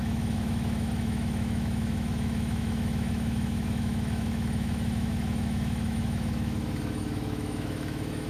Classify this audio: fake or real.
fake